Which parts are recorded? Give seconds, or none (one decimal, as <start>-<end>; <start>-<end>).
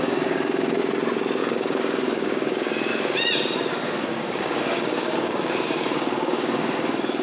0.8-1.4; 2.9-3.7